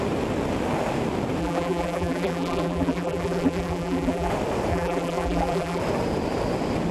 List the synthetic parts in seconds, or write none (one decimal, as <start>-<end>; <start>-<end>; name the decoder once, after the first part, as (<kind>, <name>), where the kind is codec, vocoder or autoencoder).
1.4-4.3 (vocoder, BigVGAN v2); 4.7-5.8